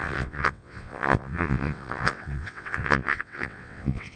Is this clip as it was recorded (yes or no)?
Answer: no